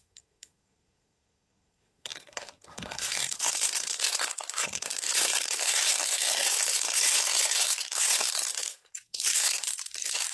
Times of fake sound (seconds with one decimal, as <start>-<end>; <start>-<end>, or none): 0.0-10.3